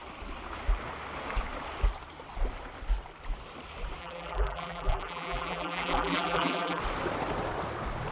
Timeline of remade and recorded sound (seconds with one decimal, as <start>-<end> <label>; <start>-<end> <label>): 0.0-4.0 recorded; 4.0-6.8 remade; 6.8-8.1 recorded